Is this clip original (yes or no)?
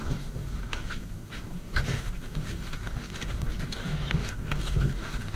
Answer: no